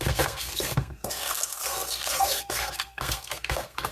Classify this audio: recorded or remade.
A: remade